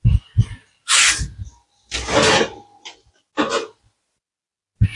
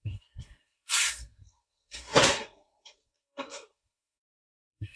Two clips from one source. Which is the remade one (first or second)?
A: second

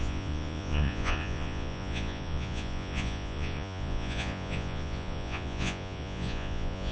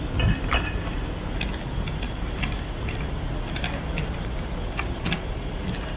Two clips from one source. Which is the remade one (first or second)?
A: first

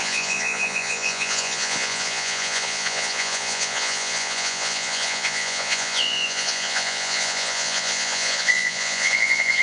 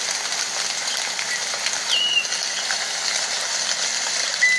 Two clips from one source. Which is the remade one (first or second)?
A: first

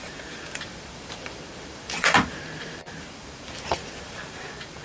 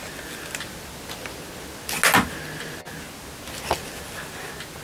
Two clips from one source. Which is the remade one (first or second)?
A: first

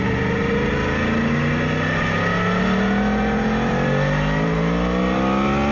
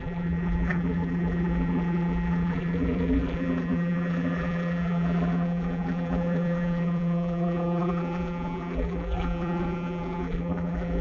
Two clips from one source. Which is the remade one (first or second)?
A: second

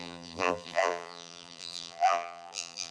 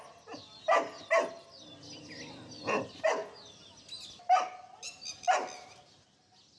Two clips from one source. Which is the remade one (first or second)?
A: first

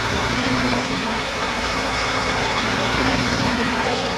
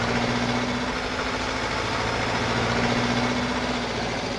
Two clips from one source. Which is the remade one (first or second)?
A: first